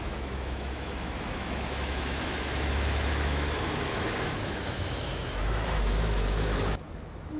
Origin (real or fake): fake